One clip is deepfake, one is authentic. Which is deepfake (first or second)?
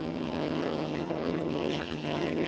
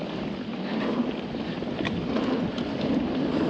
first